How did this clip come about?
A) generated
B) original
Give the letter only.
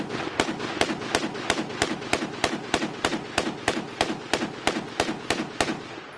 B